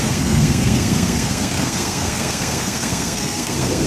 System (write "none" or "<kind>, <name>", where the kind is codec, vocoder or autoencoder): codec, SNAC